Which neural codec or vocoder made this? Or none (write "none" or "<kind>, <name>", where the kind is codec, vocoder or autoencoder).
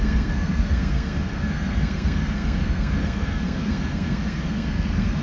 codec, SNAC